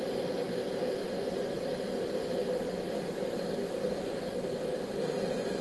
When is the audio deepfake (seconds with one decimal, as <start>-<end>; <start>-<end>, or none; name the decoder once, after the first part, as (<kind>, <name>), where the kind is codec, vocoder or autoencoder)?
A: none

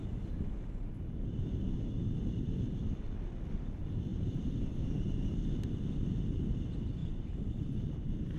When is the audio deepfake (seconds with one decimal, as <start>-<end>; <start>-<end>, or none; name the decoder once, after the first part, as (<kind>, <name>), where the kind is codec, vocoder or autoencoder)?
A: 4.1-5.1 (vocoder, BigVGAN v2); 7.0-7.6

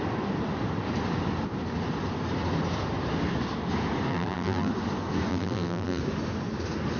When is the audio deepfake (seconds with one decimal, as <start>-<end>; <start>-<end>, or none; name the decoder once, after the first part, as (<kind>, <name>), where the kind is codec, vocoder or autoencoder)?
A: 4.1-4.7 (vocoder, BigVGAN v2); 5.3-6.0

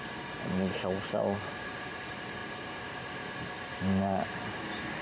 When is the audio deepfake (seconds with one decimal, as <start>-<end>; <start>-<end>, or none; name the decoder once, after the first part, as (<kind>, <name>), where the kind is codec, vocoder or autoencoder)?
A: 0.0-5.0 (vocoder, BigVGAN v2)

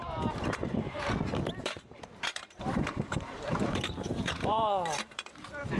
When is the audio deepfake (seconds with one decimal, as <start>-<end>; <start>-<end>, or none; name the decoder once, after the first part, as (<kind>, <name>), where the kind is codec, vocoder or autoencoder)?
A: 0.0-5.8 (vocoder, BigVGAN v2)

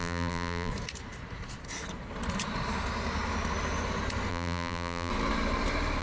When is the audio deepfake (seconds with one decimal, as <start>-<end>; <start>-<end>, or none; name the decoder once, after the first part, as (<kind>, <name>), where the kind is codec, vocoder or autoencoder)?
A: 0.0-0.7 (vocoder, BigVGAN v2); 4.3-5.1

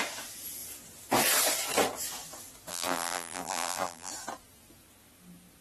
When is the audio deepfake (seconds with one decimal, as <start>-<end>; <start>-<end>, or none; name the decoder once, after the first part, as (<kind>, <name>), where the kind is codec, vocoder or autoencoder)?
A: 2.7-4.1 (vocoder, BigVGAN v2)